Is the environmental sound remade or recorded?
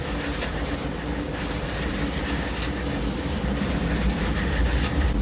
recorded